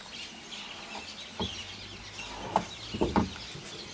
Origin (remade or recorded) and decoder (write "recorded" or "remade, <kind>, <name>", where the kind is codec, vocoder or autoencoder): recorded